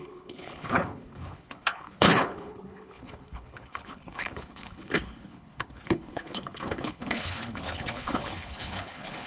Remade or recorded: remade